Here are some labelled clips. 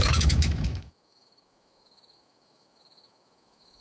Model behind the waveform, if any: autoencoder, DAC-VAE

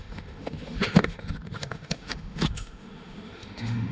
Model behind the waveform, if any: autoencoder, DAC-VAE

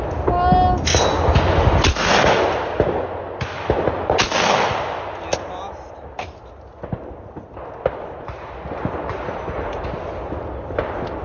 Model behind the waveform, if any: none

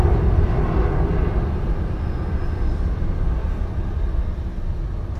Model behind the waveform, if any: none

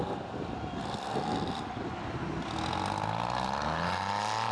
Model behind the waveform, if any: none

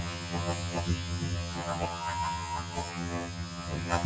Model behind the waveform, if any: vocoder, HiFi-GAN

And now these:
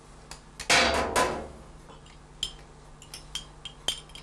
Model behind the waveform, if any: none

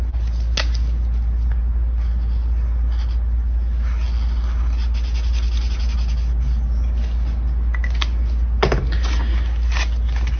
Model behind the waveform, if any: none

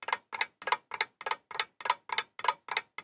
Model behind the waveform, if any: none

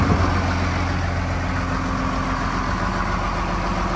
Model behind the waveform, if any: none